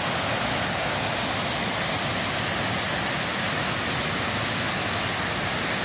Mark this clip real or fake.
real